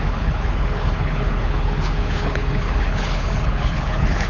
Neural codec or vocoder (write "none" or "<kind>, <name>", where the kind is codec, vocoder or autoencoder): codec, HILCodec